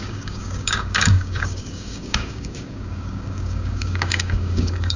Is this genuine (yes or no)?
no